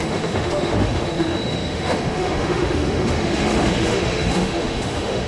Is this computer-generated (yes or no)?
yes